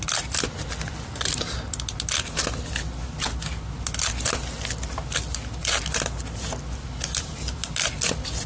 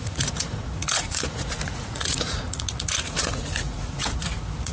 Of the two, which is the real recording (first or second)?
first